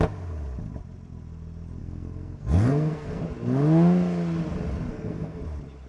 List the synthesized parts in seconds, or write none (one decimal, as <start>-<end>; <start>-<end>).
1.8-3.2; 4.9-5.4